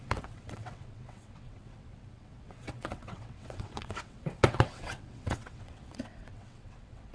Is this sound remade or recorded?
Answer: remade